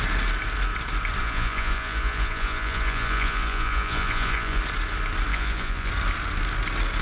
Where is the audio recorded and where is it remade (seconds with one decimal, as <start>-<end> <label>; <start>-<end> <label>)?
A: 0.0-1.2 recorded; 1.2-4.6 remade; 4.6-5.3 recorded; 5.3-5.9 remade; 5.9-7.0 recorded